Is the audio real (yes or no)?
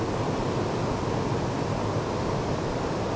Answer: yes